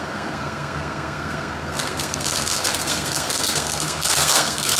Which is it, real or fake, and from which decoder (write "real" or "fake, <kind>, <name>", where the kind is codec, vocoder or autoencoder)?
fake, codec, SNAC